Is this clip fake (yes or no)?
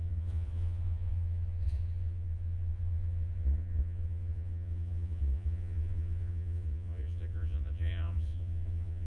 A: yes